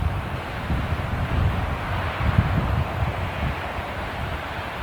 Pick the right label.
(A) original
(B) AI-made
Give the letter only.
B